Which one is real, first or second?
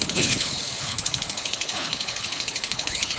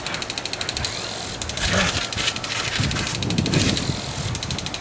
second